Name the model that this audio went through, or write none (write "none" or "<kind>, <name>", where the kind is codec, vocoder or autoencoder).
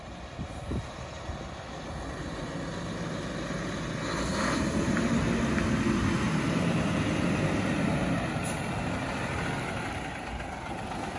none